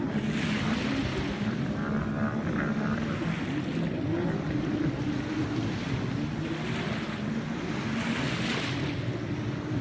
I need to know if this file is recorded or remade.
recorded